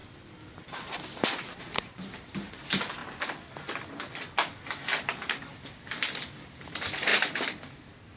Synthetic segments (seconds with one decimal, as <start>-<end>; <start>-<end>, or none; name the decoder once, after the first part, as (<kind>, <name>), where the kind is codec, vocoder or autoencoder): 1.6-3.0 (vocoder, BigVGAN v2); 6.2-8.2

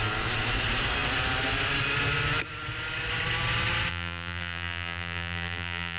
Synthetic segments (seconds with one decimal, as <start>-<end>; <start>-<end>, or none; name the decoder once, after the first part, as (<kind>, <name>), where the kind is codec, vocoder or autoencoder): 3.9-6.0 (vocoder, BigVGAN v2)

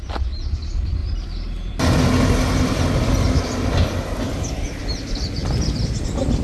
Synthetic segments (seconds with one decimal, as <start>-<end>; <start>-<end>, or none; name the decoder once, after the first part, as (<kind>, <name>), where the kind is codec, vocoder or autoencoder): 5.4-6.0 (vocoder, BigVGAN v2)

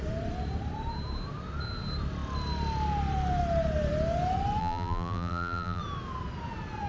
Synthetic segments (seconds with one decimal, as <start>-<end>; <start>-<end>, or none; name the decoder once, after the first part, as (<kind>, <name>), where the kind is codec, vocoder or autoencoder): 4.6-5.8 (vocoder, BigVGAN v2)

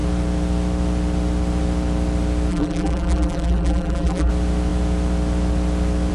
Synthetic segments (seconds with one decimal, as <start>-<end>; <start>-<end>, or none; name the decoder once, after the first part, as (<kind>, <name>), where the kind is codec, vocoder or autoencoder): 2.5-4.3 (vocoder, BigVGAN v2)

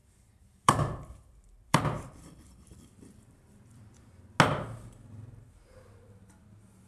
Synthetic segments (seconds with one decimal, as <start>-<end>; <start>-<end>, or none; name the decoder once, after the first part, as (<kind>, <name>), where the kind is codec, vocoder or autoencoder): 0.0-4.1 (vocoder, BigVGAN v2)

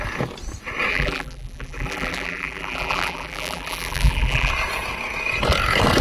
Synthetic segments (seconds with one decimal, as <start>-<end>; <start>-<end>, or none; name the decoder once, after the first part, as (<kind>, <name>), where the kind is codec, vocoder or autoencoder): 0.9-4.5 (vocoder, BigVGAN v2)